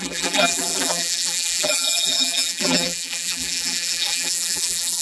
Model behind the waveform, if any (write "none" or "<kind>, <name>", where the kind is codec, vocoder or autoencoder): vocoder, BigVGAN v2